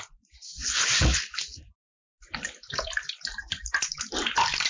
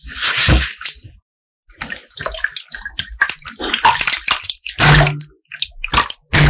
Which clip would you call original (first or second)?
second